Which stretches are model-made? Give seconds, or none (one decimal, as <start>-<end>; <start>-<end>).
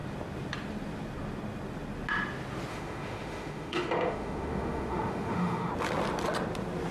2.7-5.7